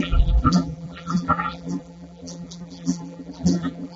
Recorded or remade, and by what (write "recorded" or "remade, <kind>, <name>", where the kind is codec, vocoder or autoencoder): remade, vocoder, BigVGAN v2